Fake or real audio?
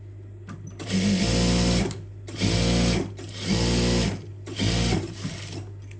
real